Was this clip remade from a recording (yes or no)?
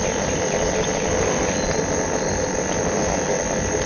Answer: no